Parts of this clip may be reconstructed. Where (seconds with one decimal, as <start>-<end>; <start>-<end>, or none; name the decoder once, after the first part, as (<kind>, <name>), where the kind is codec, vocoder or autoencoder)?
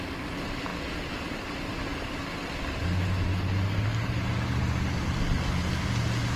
none